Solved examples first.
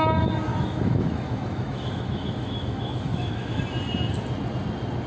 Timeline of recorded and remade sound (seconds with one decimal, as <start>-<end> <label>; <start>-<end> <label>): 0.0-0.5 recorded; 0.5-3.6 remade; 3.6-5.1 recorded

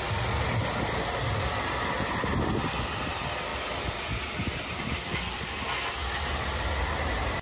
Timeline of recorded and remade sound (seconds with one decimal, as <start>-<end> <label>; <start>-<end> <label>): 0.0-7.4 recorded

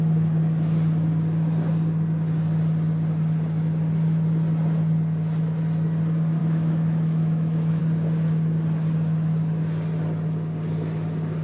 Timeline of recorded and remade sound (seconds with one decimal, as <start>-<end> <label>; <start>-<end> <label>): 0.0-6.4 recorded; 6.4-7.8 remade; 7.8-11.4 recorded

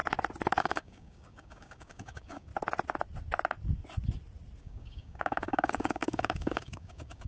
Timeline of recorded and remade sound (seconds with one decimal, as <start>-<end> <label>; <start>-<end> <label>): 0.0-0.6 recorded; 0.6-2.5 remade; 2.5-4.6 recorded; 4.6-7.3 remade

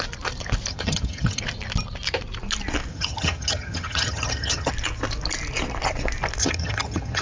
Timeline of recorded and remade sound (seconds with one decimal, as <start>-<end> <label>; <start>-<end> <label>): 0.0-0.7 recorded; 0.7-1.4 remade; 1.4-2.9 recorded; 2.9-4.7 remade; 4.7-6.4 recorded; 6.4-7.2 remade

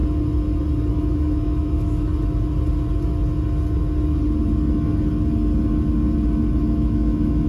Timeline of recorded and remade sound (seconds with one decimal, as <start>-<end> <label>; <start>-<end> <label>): 0.0-0.9 recorded; 0.9-2.1 remade; 2.1-6.6 recorded; 6.6-7.5 remade

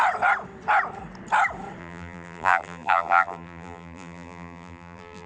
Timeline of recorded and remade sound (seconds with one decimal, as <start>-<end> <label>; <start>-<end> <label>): 0.0-1.8 recorded; 1.8-5.3 remade

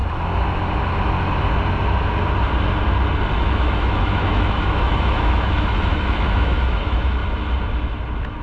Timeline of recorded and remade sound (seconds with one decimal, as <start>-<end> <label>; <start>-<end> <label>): 0.0-3.4 recorded; 3.4-7.2 remade; 7.2-8.4 recorded